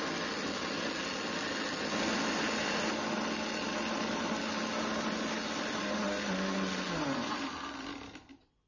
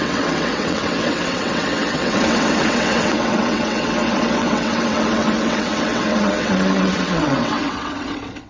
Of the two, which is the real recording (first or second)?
first